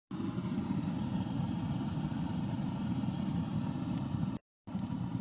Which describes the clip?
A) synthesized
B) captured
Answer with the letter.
A